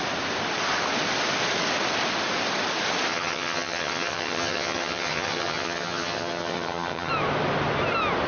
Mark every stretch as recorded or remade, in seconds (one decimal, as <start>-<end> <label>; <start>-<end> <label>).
0.0-3.1 recorded; 3.1-7.1 remade; 7.1-8.3 recorded